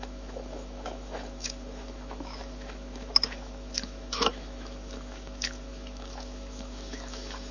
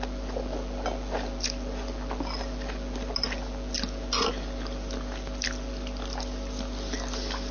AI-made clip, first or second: first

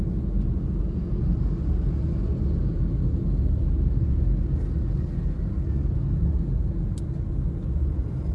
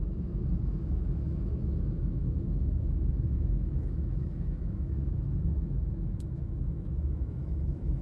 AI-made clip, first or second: second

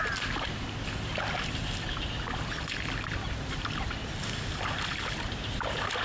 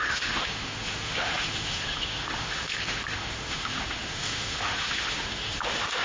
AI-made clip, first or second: second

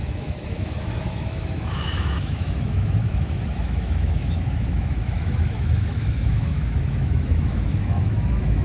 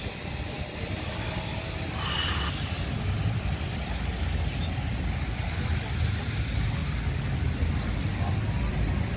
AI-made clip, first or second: first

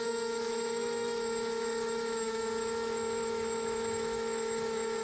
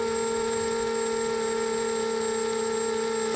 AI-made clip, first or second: first